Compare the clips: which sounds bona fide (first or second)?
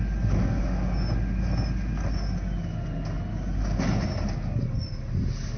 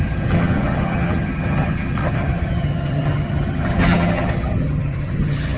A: first